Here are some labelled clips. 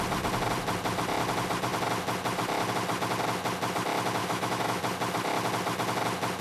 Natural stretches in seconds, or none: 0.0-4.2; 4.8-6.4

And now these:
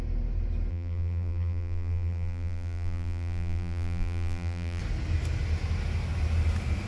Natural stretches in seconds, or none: 0.0-0.7; 4.8-6.9

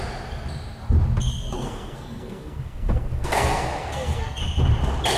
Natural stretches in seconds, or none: 0.0-1.3; 4.4-5.2

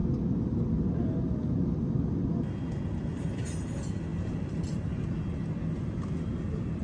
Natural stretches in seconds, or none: 0.0-6.8